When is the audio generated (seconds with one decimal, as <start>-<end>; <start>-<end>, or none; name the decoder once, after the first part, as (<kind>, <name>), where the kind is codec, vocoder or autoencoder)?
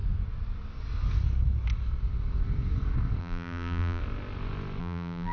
3.2-4.0 (vocoder, BigVGAN v2); 4.8-5.3